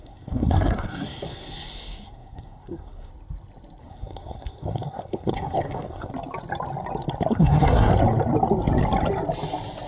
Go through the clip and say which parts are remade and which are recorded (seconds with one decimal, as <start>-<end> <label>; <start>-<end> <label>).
0.0-3.1 remade; 3.1-3.8 recorded; 3.8-6.1 remade; 6.1-7.3 recorded; 7.3-7.9 remade; 7.9-9.9 recorded